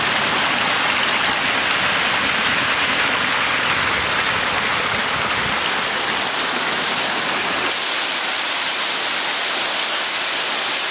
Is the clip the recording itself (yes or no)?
yes